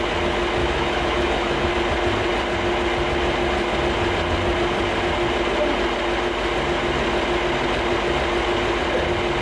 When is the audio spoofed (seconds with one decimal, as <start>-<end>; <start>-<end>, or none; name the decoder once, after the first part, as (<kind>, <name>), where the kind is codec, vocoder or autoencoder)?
0.6-1.7 (autoencoder, DAC-VAE)